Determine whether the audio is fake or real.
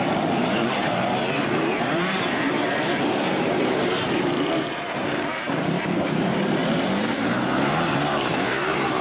fake